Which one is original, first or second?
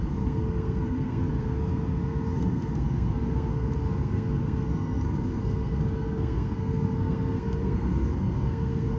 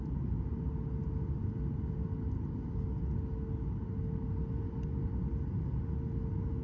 second